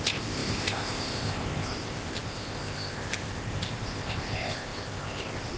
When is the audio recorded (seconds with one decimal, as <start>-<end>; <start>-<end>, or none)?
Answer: none